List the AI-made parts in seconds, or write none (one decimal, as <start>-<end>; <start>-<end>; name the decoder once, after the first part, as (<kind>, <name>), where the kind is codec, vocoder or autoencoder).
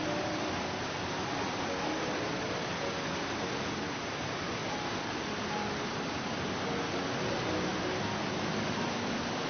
none